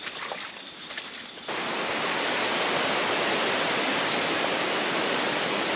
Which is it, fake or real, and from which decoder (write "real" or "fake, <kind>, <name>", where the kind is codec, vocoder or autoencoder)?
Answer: real